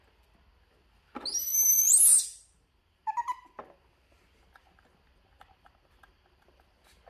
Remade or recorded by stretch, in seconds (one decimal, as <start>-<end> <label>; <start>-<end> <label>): 0.0-7.1 recorded